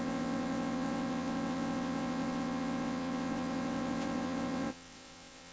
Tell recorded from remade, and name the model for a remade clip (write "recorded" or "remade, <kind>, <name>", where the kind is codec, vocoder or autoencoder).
remade, vocoder, WaveNeXt